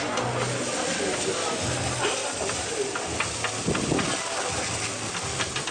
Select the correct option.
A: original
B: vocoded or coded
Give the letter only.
A